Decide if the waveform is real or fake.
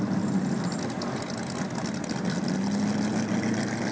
real